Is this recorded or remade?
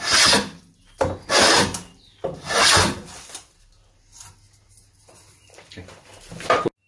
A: recorded